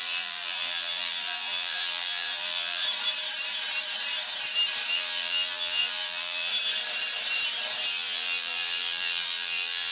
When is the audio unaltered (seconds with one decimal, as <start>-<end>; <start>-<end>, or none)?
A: 2.8-4.9; 6.5-7.9